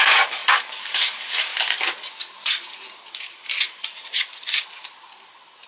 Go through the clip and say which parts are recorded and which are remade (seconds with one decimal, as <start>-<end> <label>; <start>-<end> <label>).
0.0-1.5 remade; 1.5-3.1 recorded; 3.1-3.5 remade; 3.5-5.7 recorded

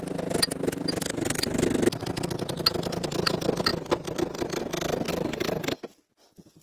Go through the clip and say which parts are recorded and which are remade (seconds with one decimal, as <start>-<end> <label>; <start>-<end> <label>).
0.0-5.1 recorded; 5.1-5.8 remade; 5.8-6.6 recorded

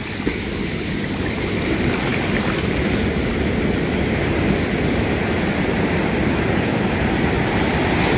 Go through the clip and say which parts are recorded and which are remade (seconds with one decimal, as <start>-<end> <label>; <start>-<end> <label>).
0.0-8.2 recorded

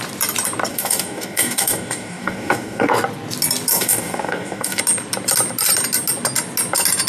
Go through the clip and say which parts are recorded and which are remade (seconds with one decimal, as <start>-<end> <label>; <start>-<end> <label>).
0.0-0.7 recorded; 0.7-2.9 remade; 2.9-3.7 recorded; 3.7-4.8 remade; 4.8-7.1 recorded

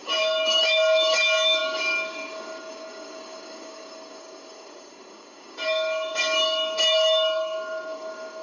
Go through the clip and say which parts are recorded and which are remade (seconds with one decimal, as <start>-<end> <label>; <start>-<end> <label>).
0.0-8.4 remade

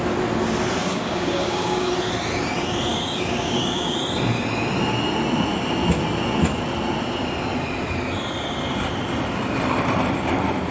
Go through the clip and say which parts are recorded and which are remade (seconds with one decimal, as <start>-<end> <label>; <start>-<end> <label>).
0.0-0.8 recorded; 0.8-1.9 remade; 1.9-2.9 recorded; 2.9-4.0 remade; 4.0-10.7 recorded

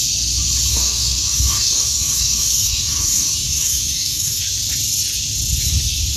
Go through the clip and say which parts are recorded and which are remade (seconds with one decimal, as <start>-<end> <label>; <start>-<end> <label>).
0.0-0.7 recorded; 0.7-4.4 remade; 4.4-6.2 recorded

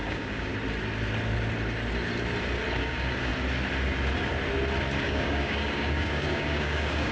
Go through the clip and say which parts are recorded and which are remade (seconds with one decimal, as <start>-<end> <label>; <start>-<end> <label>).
0.0-0.5 remade; 0.5-2.8 recorded; 2.8-3.3 remade; 3.3-5.0 recorded; 5.0-7.1 remade